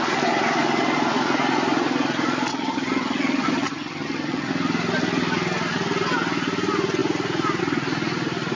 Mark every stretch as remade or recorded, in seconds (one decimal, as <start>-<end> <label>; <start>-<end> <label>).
0.0-2.5 recorded; 2.5-4.5 remade; 4.5-8.5 recorded